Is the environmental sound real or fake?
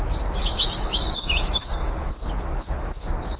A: fake